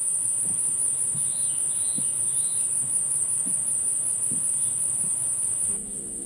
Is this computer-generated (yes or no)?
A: yes